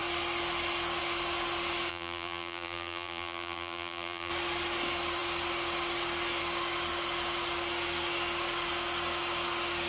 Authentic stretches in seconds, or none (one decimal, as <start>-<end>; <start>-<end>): 0.0-1.9; 4.3-9.9